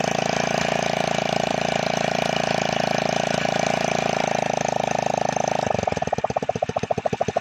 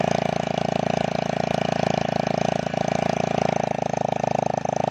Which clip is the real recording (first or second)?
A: second